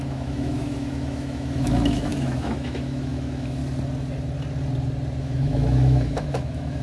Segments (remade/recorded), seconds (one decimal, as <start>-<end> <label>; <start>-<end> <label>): 0.0-3.6 remade; 3.6-5.2 recorded; 5.2-6.8 remade